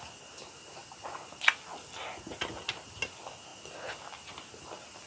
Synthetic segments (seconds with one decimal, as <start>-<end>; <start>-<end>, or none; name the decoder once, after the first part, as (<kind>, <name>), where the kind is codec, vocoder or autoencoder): none